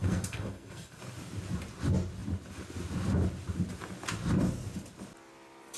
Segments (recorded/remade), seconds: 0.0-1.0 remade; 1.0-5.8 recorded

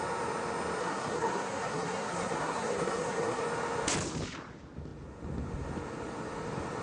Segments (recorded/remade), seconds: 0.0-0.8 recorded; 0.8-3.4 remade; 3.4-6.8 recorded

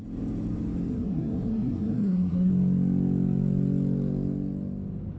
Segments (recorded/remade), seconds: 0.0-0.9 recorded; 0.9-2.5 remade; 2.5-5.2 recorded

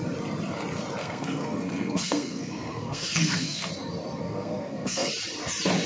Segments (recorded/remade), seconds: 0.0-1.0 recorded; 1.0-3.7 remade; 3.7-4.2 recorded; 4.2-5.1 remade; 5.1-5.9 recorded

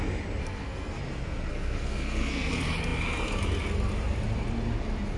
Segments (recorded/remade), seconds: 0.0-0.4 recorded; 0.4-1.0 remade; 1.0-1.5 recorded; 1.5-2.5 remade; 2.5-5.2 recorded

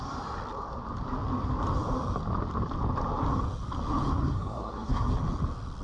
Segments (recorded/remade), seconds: 0.0-4.2 recorded; 4.2-5.1 remade; 5.1-5.8 recorded